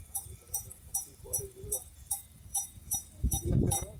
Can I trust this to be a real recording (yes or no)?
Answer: no